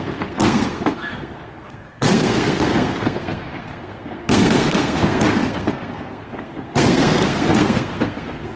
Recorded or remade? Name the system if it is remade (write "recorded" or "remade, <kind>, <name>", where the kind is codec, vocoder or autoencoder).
remade, codec, SNAC